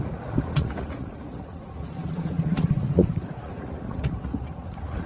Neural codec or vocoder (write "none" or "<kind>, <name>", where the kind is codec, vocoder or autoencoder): vocoder, Vocos